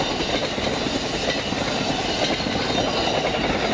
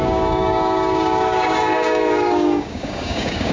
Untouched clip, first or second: first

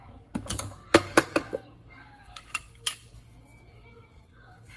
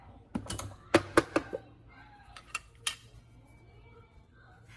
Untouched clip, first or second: second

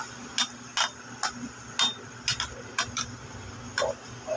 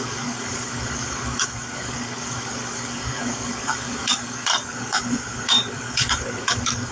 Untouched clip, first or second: first